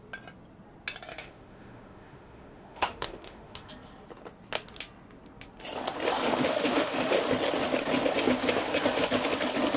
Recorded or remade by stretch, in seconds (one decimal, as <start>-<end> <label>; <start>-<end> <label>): 0.0-1.1 recorded; 1.1-3.7 remade; 3.7-6.3 recorded; 6.3-7.1 remade; 7.1-9.8 recorded